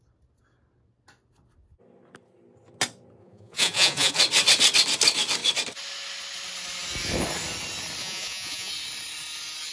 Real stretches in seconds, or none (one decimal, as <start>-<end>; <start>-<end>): 0.0-3.2; 4.2-8.0; 8.7-9.7